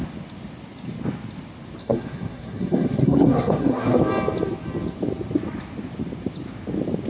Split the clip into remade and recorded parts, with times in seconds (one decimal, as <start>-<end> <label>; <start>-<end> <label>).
0.0-1.8 recorded; 1.8-4.0 remade; 4.0-7.1 recorded